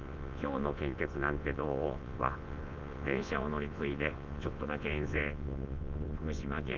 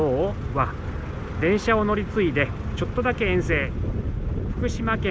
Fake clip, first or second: first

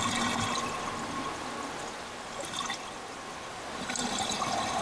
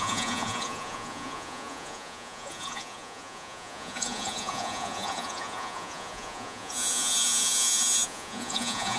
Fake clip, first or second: second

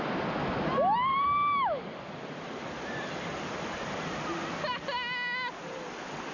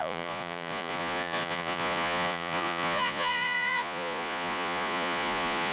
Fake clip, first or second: second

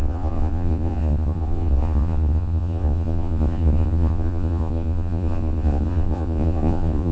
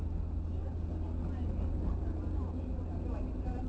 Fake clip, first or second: first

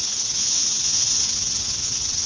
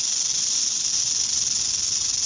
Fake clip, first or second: first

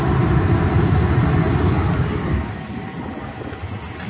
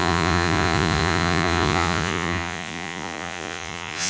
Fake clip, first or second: second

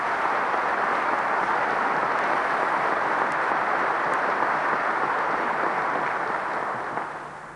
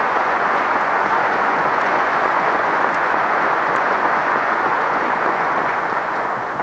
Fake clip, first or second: second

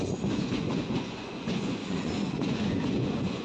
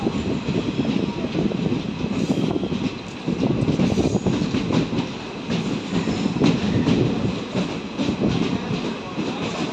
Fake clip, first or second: first